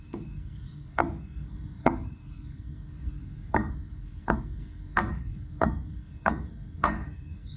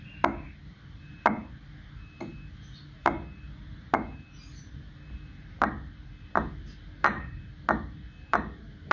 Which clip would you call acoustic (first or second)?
second